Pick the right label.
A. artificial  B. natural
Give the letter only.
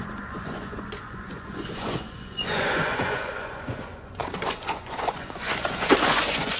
A